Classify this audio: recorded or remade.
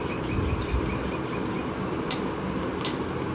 recorded